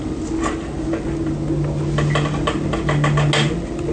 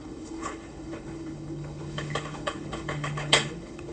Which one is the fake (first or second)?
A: second